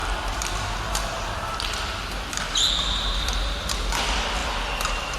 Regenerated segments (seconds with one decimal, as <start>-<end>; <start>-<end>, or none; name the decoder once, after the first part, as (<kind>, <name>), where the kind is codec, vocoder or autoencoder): 0.0-2.8 (vocoder, BigVGAN v2); 4.4-5.2